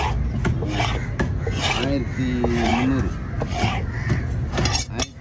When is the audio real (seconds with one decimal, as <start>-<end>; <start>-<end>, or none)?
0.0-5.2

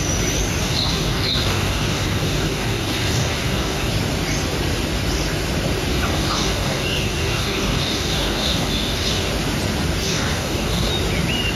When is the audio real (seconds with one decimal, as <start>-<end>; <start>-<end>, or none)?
0.0-0.6; 3.9-5.9; 9.3-10.0; 10.9-11.6

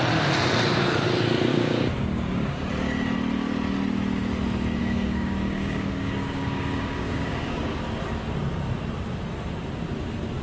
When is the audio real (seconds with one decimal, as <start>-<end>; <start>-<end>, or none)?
0.0-1.5; 2.6-4.8; 7.8-10.4

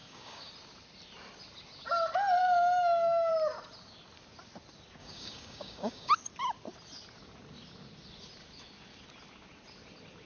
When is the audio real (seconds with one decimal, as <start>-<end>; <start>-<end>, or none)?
0.5-2.4; 3.3-5.0; 6.1-10.3

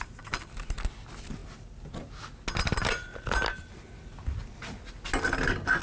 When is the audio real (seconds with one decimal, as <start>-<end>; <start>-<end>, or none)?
0.0-5.8

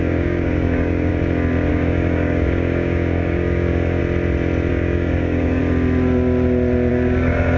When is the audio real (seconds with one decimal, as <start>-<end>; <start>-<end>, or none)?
1.1-1.7; 4.0-4.7; 5.6-6.9